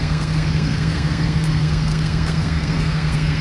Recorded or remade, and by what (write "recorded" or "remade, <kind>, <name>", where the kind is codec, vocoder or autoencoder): remade, codec, SNAC